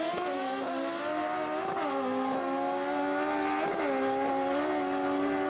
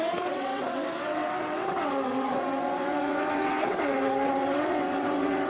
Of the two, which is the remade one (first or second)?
second